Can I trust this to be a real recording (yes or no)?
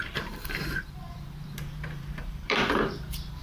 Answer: no